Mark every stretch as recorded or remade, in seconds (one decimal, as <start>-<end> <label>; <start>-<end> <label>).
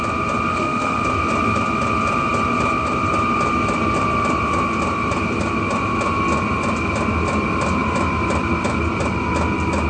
0.0-0.5 recorded; 0.5-1.0 remade; 1.0-9.9 recorded